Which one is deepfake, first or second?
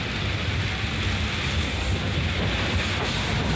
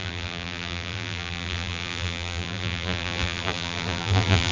second